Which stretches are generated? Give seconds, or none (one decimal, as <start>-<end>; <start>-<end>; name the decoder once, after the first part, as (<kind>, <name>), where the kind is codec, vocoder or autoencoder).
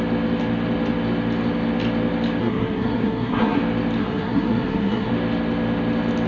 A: 2.4-3.6 (codec, SNAC); 4.0-5.1